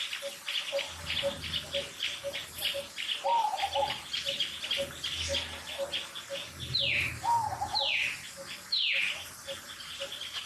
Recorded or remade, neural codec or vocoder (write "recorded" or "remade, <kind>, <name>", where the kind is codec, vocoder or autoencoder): recorded